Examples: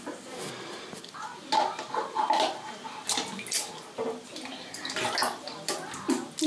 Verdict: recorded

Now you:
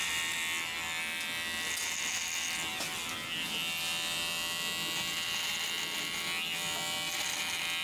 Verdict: recorded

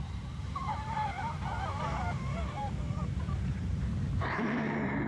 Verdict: remade